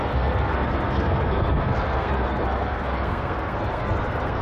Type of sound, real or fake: fake